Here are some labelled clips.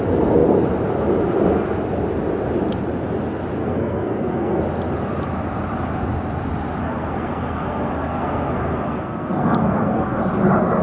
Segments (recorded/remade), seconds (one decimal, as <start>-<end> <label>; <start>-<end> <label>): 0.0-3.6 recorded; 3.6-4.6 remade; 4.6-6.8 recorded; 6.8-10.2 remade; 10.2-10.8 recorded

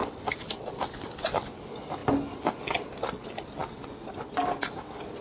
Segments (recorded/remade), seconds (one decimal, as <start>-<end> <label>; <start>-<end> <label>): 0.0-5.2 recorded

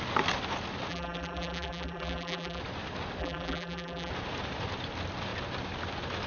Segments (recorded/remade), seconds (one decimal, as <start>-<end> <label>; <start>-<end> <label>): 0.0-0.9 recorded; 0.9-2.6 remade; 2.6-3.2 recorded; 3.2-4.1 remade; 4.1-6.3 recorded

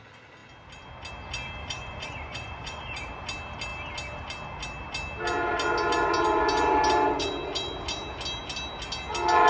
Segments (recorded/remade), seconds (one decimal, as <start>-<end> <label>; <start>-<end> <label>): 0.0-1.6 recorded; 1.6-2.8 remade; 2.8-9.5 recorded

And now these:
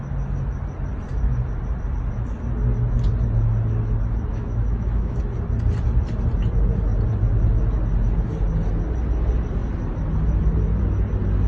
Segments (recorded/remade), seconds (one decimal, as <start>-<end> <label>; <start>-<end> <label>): 0.0-4.3 recorded; 4.3-5.2 remade; 5.2-11.5 recorded

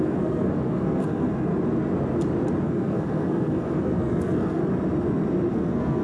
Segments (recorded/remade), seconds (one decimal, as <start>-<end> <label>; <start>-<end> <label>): 0.0-1.5 remade; 1.5-2.6 recorded; 2.6-4.6 remade; 4.6-5.5 recorded; 5.5-6.0 remade

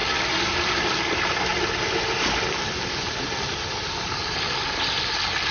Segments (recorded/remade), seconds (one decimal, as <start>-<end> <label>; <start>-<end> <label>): 0.0-5.5 recorded